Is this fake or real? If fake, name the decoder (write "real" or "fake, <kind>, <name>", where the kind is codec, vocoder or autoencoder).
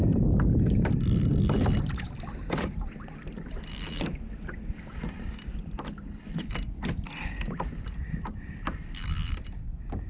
real